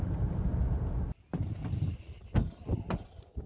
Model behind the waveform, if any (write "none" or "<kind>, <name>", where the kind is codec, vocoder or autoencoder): none